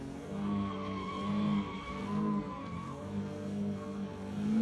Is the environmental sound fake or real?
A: fake